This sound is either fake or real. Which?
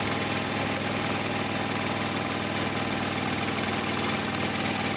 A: real